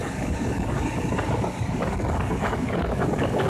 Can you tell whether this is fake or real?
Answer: fake